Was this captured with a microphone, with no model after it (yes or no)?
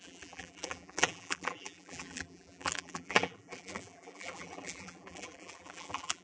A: no